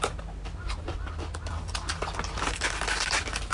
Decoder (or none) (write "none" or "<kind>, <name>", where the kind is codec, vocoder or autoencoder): none